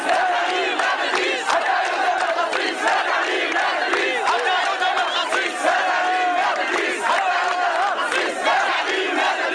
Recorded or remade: recorded